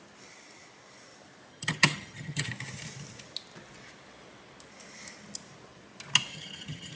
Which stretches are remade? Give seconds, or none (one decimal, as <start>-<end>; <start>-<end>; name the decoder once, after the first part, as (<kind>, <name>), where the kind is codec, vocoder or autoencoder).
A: 1.5-2.5 (vocoder, HiFi-GAN); 6.3-7.0